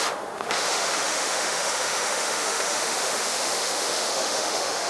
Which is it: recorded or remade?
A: remade